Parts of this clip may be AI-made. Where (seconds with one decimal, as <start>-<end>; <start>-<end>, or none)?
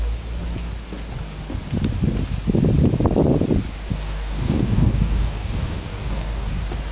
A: 3.9-6.5